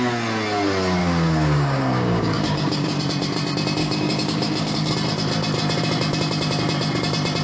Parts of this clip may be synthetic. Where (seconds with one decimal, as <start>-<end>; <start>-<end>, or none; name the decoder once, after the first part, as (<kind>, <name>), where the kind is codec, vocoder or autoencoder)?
1.0-3.0 (codec, DAC); 3.8-4.9